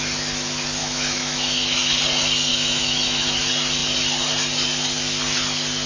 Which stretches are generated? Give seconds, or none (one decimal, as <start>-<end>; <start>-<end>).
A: 0.8-2.0; 2.5-3.4